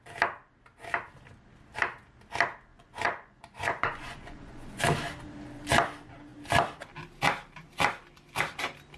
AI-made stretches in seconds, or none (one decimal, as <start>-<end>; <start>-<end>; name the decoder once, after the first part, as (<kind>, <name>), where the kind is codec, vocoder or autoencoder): 2.7-4.8 (vocoder, Vocos)